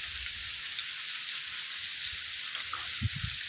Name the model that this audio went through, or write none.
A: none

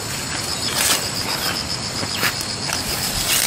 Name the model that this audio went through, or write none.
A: none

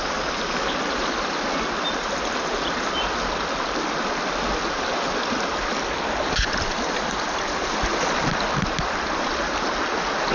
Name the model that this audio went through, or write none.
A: none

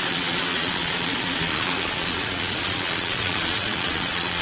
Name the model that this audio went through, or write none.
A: vocoder, Vocos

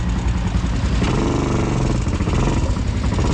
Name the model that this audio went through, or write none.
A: none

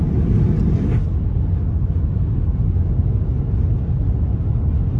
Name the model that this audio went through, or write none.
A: none